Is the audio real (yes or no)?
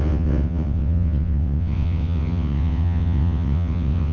no